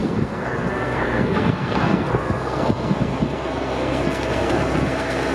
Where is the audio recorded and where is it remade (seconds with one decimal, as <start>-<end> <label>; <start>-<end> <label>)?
0.0-5.3 remade